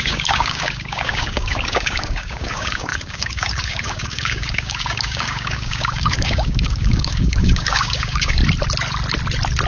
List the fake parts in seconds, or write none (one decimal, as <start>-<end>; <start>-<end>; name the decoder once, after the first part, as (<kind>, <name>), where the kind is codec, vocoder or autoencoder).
0.0-8.4 (codec, DAC)